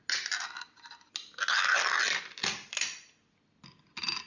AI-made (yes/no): no